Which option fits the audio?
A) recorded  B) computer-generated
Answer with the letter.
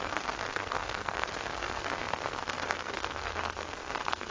B